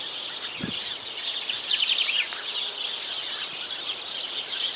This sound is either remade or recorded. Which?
recorded